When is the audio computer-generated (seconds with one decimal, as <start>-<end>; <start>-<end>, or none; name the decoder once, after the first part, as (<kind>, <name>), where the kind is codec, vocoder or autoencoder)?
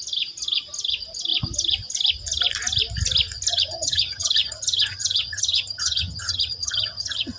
3.5-7.4 (vocoder, HiFi-GAN)